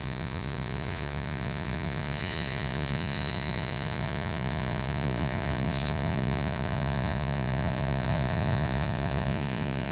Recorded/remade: remade